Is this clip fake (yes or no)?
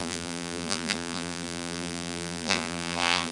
yes